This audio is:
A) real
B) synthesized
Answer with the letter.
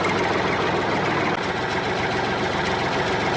A